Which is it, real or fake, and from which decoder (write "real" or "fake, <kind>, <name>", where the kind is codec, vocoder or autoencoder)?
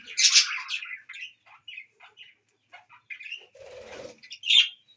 real